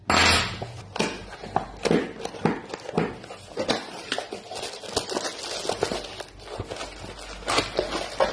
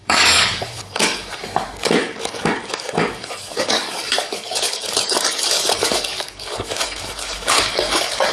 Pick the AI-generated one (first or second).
second